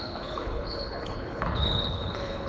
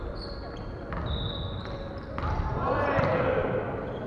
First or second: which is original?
second